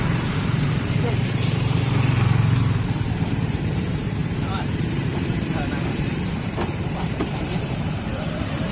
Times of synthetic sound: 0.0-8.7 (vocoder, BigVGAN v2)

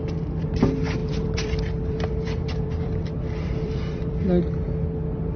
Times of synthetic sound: 1.0-4.2 (vocoder, BigVGAN v2)